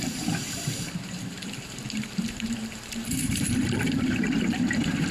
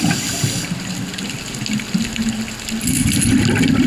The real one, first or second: second